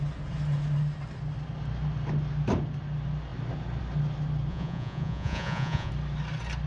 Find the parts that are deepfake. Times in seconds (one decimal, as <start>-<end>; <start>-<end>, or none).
4.5-5.9